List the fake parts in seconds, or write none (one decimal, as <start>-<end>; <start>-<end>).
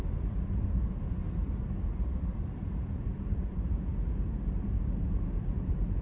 0.0-1.2; 2.0-6.0